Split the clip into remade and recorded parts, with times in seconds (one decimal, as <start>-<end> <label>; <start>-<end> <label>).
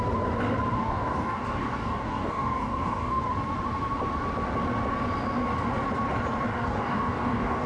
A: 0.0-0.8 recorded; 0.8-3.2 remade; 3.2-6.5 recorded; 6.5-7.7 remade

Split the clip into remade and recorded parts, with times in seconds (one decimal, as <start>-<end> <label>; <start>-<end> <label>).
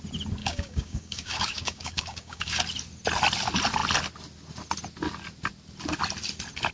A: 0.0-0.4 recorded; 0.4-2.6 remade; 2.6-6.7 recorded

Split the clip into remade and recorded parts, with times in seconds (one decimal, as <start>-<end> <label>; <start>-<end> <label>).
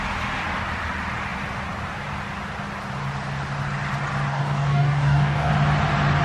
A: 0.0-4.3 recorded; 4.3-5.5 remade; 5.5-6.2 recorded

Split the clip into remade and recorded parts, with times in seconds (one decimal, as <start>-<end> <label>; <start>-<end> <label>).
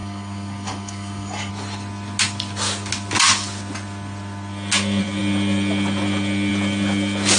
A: 0.0-1.5 remade; 1.5-7.4 recorded